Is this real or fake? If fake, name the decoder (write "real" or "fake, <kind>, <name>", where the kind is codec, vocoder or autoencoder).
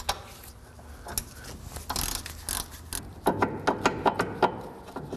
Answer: real